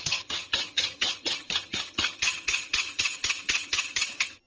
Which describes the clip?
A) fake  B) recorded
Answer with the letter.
A